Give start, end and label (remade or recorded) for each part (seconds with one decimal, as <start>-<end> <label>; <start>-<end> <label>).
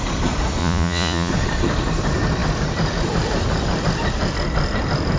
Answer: 0.0-0.6 recorded; 0.6-1.3 remade; 1.3-5.2 recorded